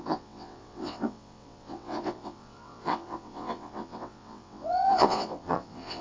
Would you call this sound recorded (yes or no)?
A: no